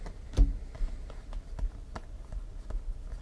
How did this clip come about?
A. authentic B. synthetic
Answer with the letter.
A